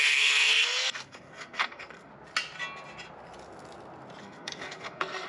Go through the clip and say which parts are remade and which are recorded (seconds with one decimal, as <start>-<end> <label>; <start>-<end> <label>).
0.0-2.1 remade; 2.1-4.2 recorded; 4.2-5.3 remade